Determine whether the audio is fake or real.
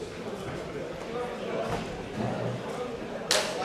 real